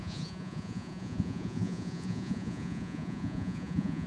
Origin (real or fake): fake